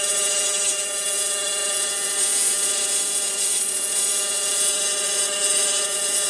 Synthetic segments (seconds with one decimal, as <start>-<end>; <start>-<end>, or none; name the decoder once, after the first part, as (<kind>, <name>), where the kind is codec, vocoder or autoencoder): 0.0-6.3 (vocoder, Vocos)